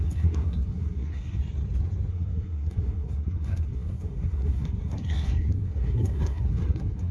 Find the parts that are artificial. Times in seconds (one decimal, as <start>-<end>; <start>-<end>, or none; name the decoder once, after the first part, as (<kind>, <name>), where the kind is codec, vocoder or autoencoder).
0.0-1.4 (codec, SNAC); 2.1-7.1